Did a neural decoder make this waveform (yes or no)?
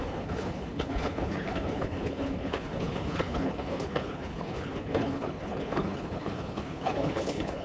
yes